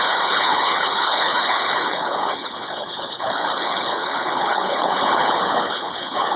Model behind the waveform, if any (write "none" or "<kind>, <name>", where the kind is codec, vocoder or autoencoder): codec, HILCodec